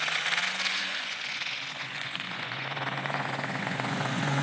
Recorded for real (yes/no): no